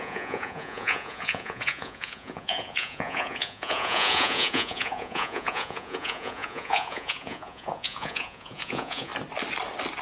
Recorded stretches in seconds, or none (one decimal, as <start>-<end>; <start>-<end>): 9.1-10.0